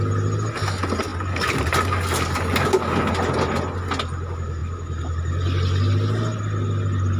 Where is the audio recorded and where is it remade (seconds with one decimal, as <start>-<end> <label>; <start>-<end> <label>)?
0.0-7.2 recorded